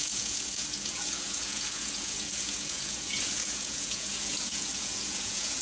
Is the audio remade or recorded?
remade